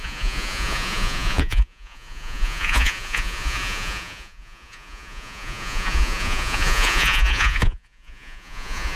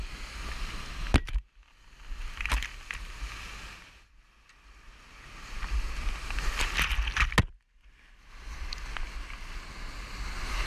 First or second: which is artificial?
first